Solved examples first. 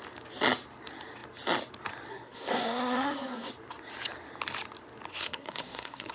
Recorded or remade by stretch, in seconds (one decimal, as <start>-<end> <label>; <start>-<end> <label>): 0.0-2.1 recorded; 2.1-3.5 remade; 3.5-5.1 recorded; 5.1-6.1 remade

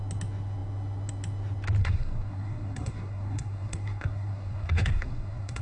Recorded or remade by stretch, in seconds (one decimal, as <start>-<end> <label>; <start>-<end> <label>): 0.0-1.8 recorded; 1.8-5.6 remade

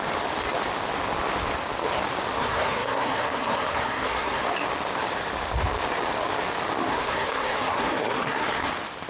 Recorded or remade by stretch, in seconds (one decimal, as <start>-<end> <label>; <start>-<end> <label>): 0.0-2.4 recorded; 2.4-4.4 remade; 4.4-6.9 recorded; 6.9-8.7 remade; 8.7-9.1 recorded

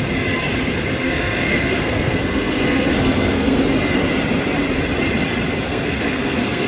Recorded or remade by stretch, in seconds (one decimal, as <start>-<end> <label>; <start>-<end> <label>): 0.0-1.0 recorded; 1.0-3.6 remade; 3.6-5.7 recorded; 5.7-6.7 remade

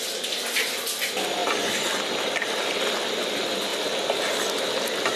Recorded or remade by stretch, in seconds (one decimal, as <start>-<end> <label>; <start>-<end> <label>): 0.0-5.2 recorded

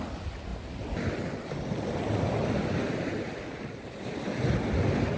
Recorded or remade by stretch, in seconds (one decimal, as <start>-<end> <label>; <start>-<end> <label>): 0.0-5.2 recorded